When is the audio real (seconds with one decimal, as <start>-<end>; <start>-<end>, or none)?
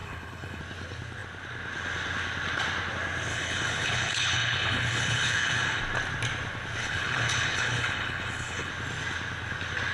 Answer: 0.6-3.3; 5.8-6.8; 8.7-9.9